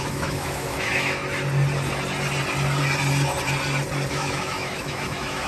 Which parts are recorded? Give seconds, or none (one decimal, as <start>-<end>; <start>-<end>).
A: 1.2-4.1